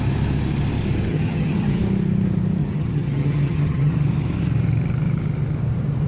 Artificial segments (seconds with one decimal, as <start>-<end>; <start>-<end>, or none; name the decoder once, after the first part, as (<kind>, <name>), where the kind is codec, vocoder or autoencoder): 1.1-1.8 (vocoder, HiFi-GAN); 2.6-3.9